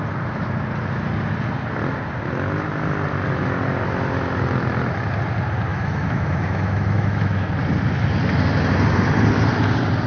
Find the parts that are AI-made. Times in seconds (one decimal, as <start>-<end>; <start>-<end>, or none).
5.7-7.5